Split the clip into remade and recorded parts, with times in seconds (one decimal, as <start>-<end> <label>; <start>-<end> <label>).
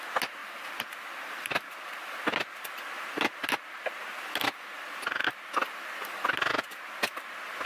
0.0-0.4 recorded; 0.4-2.2 remade; 2.2-5.6 recorded; 5.6-6.5 remade; 6.5-7.7 recorded